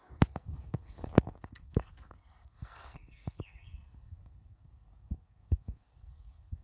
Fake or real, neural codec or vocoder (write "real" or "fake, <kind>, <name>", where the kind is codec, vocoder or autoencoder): fake, codec, SNAC